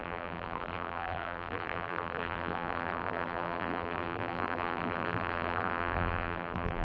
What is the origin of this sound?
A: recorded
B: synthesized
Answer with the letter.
B